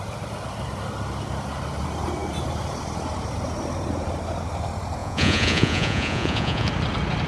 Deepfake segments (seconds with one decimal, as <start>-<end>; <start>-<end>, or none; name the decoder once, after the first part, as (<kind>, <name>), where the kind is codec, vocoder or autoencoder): 5.0-6.7 (vocoder, Vocos)